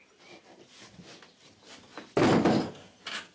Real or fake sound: real